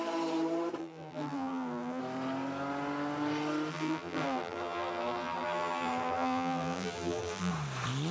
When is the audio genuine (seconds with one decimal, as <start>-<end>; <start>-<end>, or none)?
0.0-0.8; 2.0-3.7; 7.5-8.1